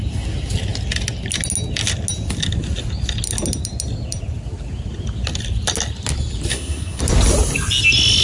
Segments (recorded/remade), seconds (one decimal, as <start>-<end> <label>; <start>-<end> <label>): 0.0-6.5 recorded; 6.5-7.0 remade; 7.0-8.2 recorded

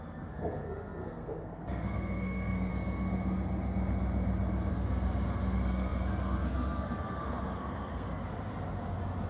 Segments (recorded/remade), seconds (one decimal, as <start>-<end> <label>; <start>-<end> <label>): 0.0-2.7 remade; 2.7-4.7 recorded; 4.7-8.1 remade; 8.1-9.3 recorded

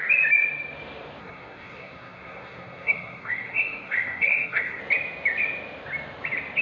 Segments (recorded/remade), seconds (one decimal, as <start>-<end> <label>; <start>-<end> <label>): 0.0-1.2 recorded; 1.2-4.8 remade; 4.8-6.6 recorded

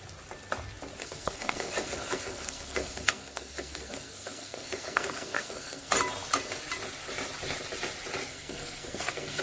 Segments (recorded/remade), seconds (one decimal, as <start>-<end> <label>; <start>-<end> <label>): 0.0-1.0 recorded; 1.0-5.9 remade; 5.9-8.2 recorded; 8.2-9.4 remade

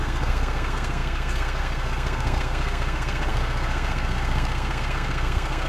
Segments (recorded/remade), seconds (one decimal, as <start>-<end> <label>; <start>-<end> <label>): 0.0-5.7 remade

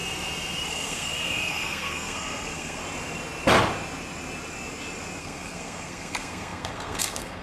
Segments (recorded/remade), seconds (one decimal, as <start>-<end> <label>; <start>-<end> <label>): 0.0-0.7 recorded; 0.7-2.8 remade; 2.8-5.2 recorded; 5.2-7.4 remade

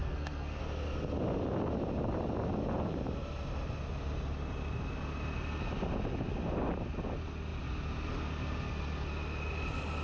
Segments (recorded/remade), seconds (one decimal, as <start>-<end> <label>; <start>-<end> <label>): 0.0-0.6 remade; 0.6-10.0 recorded

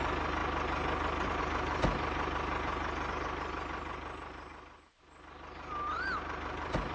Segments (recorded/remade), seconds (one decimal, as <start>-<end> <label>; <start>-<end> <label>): 0.0-6.9 recorded